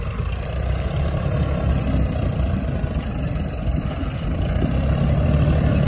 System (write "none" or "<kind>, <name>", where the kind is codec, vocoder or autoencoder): vocoder, BigVGAN v2